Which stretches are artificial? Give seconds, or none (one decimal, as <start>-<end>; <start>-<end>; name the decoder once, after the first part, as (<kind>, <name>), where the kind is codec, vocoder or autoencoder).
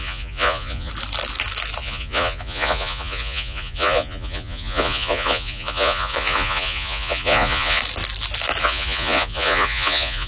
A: 0.0-0.9 (vocoder, Vocos); 1.8-7.8; 8.6-10.3